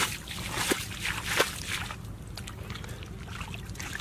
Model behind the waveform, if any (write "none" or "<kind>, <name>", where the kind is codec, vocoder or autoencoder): none